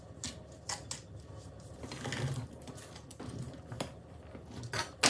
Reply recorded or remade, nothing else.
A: recorded